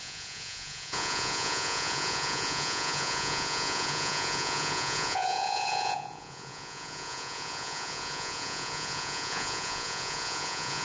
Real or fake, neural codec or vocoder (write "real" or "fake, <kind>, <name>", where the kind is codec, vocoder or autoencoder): fake, vocoder, Vocos